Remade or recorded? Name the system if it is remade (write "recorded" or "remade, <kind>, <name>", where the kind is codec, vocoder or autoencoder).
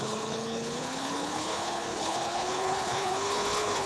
remade, codec, HILCodec